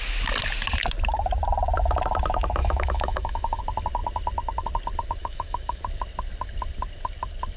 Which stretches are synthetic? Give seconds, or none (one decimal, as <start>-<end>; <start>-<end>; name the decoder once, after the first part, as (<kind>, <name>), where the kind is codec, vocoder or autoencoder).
2.6-3.6 (autoencoder, DAC-VAE); 5.2-5.8